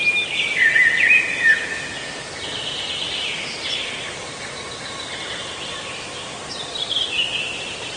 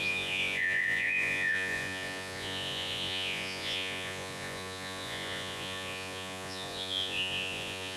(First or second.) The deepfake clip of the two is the second